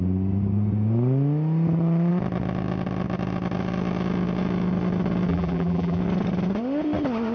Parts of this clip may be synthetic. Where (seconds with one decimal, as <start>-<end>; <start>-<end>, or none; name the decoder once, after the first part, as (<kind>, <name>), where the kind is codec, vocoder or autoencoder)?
5.3-6.0 (vocoder, BigVGAN v2)